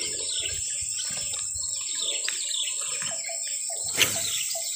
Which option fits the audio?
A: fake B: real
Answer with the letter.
B